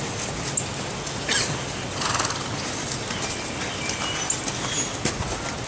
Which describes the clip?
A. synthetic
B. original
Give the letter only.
B